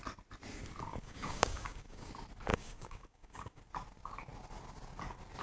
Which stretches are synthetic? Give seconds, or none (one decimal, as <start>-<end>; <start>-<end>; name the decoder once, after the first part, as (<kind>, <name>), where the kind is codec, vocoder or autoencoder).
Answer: 0.9-2.1 (codec, DAC); 2.5-3.6